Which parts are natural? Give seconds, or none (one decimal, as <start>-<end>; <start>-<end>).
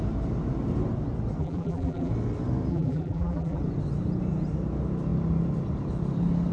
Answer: 0.0-1.4; 2.1-2.7; 3.6-6.5